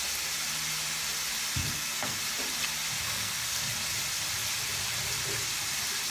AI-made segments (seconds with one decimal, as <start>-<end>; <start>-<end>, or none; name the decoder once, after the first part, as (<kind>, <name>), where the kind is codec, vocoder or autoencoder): 1.6-2.2 (codec, SNAC); 3.1-3.7